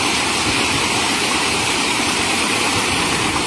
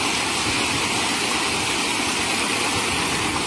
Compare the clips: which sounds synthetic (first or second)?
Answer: first